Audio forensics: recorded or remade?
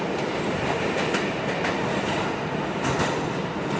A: recorded